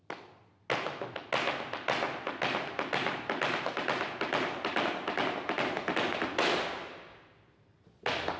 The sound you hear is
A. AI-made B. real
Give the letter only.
B